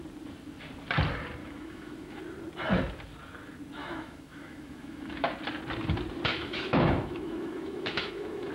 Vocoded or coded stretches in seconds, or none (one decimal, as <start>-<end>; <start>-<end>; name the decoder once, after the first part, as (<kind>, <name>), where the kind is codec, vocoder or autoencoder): 1.4-2.2 (autoencoder, DAC-VAE); 3.8-5.3; 6.3-8.5